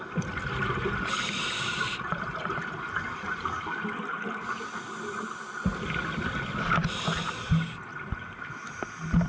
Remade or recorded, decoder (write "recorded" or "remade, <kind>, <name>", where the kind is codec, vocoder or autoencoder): recorded